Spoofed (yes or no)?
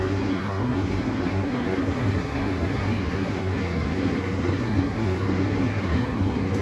yes